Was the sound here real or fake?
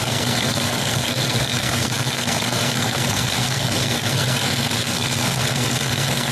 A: fake